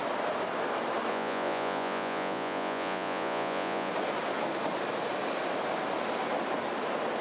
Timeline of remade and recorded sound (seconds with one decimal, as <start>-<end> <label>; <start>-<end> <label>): 0.0-1.1 recorded; 1.1-3.9 remade; 3.9-7.2 recorded